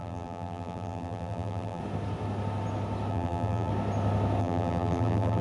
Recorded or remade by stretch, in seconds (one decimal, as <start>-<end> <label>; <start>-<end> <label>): 0.0-1.8 remade; 1.8-3.1 recorded; 3.1-3.7 remade; 3.7-4.4 recorded; 4.4-5.4 remade